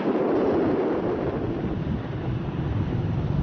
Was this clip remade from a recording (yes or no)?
no